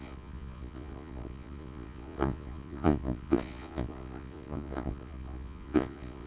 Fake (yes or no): yes